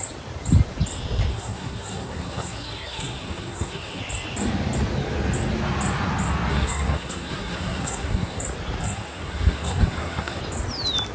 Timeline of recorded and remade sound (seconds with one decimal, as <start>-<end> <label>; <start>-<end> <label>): 0.0-1.3 recorded; 1.3-4.0 remade; 4.0-6.5 recorded; 6.5-8.4 remade; 8.4-8.8 recorded; 8.8-10.4 remade; 10.4-11.1 recorded